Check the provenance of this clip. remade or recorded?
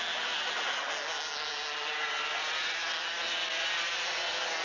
recorded